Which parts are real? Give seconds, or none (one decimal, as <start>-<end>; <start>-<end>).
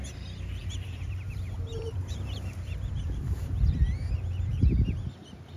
0.0-0.6; 3.7-5.6